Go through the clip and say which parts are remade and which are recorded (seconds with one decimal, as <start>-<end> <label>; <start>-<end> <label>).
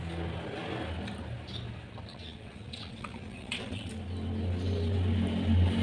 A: 0.0-2.1 recorded; 2.1-3.9 remade; 3.9-5.8 recorded